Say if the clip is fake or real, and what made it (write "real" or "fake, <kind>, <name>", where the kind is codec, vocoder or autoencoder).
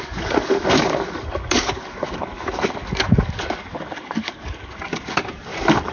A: fake, codec, DAC